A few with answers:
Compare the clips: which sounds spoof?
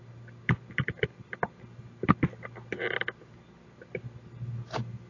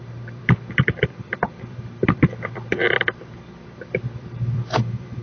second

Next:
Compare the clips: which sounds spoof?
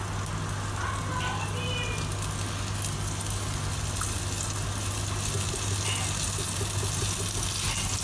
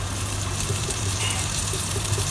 second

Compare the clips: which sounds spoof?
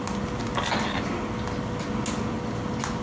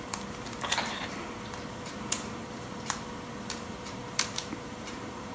second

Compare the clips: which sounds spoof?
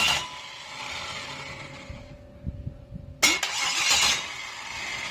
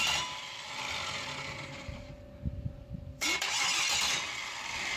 second